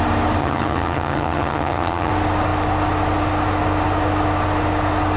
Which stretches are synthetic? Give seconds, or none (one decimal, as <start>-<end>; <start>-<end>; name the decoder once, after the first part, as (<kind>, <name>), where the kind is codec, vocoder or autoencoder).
0.4-2.1 (vocoder, HiFi-GAN)